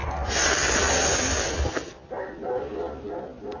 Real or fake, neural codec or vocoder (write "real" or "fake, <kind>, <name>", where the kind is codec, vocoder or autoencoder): real